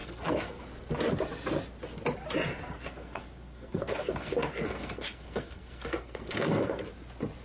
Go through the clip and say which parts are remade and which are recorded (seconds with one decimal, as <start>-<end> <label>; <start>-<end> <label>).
0.0-0.6 remade; 0.6-2.5 recorded; 2.5-6.9 remade; 6.9-7.4 recorded